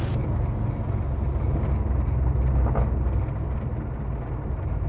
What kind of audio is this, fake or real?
real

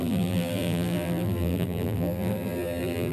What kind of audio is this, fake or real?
fake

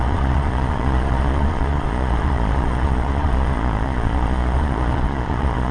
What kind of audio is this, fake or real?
fake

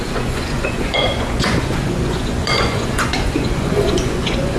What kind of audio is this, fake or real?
fake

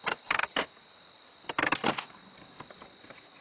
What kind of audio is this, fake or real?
real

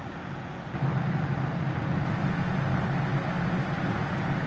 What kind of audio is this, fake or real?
real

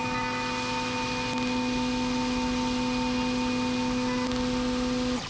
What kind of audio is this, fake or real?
real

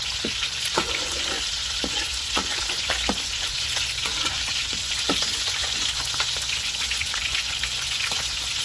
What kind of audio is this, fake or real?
fake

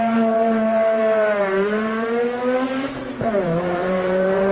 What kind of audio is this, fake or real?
fake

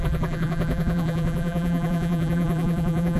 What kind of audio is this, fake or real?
fake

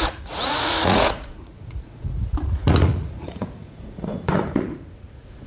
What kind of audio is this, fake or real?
fake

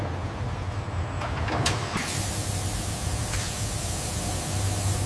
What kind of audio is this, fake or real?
real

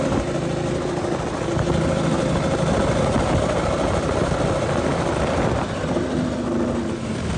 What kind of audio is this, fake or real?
real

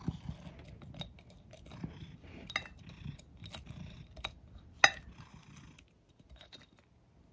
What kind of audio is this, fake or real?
real